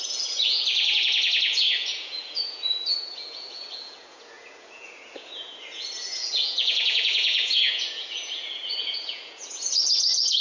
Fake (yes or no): yes